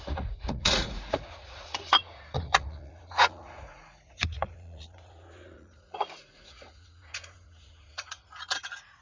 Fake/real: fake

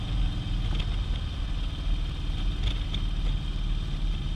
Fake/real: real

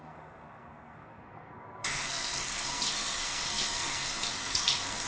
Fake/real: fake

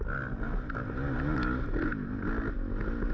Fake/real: real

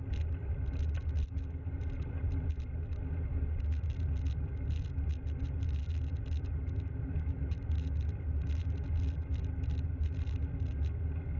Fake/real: real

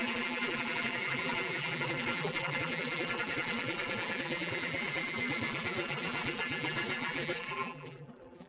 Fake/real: fake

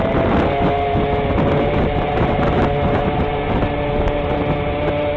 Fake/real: real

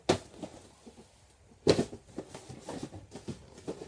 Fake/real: real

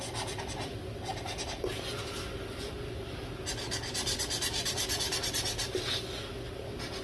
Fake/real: real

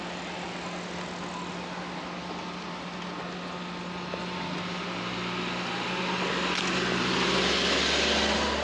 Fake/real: real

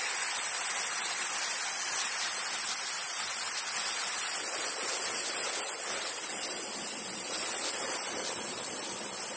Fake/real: real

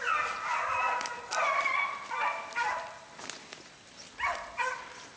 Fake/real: real